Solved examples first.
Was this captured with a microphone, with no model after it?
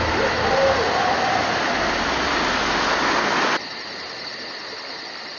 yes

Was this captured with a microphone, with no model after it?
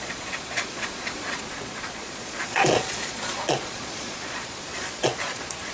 no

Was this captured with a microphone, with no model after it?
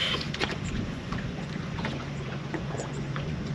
no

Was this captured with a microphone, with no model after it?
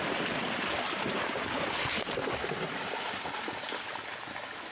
yes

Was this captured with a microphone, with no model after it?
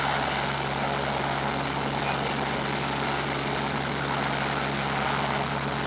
yes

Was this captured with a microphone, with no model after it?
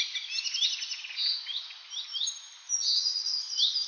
yes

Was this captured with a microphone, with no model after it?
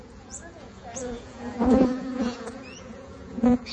no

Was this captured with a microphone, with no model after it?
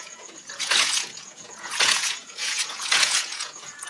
no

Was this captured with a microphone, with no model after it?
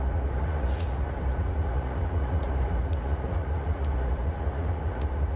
no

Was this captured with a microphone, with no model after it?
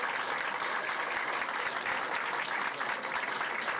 yes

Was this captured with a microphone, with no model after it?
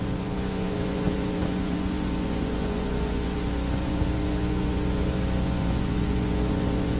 no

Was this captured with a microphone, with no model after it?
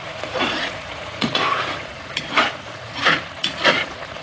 no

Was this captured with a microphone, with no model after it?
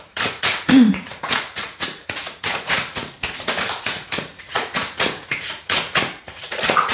no